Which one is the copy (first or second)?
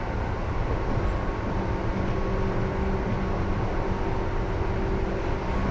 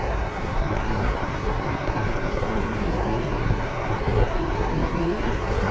second